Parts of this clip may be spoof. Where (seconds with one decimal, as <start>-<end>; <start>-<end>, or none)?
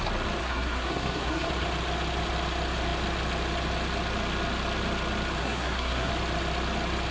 0.4-1.5; 5.4-6.1